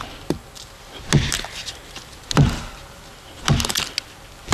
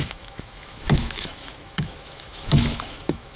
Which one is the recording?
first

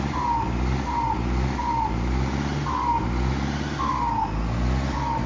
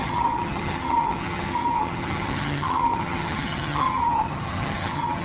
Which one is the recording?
first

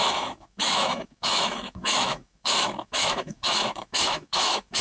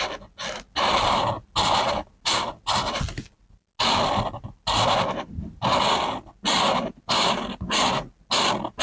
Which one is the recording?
second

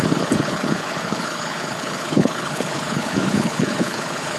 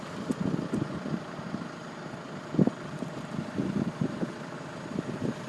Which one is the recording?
second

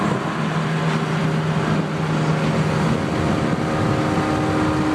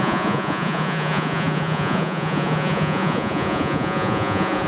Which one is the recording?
first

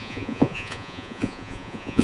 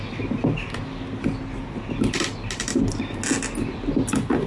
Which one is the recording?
second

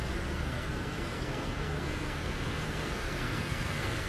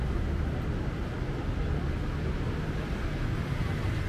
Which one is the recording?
second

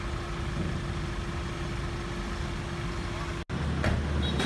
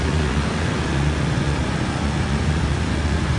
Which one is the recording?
first